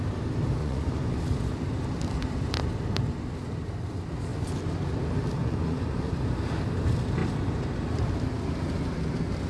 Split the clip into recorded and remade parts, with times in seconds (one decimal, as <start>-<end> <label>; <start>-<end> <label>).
0.0-0.6 recorded; 0.6-1.2 remade; 1.2-5.4 recorded; 5.4-6.1 remade; 6.1-9.5 recorded